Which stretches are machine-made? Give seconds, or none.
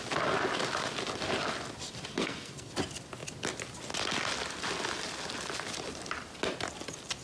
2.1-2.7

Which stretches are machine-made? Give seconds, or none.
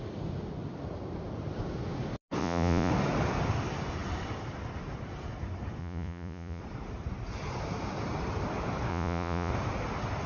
2.4-2.9; 5.8-6.6; 8.9-9.5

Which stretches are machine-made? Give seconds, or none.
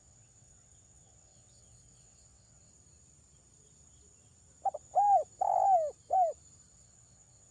0.0-2.7; 6.7-7.5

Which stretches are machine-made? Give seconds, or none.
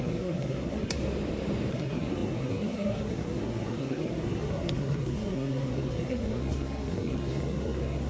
0.0-1.0; 1.7-8.1